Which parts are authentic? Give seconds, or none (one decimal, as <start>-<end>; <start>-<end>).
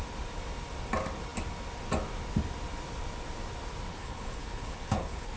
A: 0.0-3.9